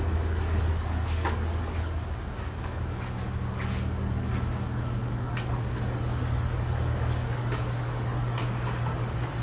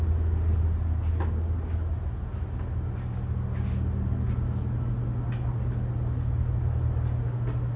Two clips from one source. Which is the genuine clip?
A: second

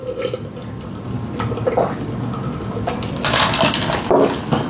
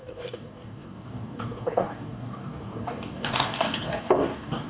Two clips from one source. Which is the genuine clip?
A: first